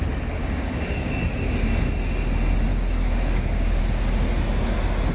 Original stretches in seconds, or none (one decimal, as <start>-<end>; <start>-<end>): 0.0-0.4; 1.1-2.7; 3.8-5.1